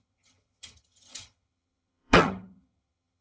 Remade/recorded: remade